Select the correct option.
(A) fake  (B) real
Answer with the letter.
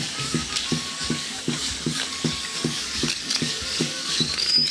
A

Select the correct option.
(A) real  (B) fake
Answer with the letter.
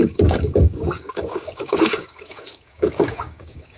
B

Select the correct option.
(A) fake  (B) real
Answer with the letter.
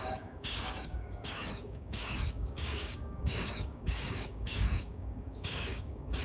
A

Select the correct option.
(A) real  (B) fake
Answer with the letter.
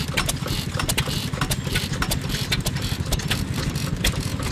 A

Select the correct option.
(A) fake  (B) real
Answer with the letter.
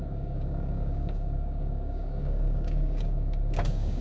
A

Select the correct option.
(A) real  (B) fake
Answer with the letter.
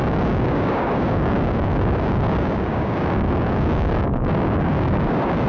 B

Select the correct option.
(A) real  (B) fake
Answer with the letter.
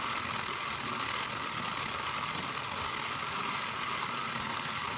A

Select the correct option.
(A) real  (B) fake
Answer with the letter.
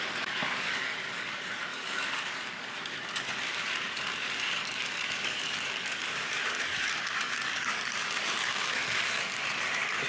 B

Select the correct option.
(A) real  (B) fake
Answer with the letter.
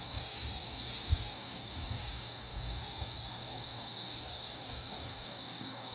B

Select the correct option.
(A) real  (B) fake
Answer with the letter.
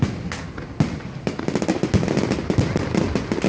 A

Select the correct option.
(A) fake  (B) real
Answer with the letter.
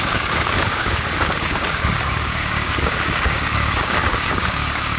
A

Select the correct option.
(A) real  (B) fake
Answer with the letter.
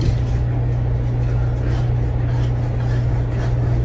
A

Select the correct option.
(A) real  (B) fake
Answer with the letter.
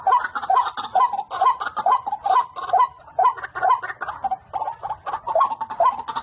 A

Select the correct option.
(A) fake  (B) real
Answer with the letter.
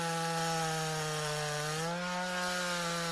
B